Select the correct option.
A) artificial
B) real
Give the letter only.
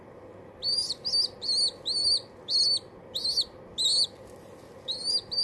B